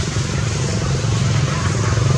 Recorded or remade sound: recorded